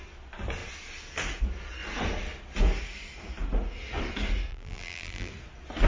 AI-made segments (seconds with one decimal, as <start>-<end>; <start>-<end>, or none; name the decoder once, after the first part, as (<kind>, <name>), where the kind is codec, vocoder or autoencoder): 4.5-5.3 (vocoder, BigVGAN v2)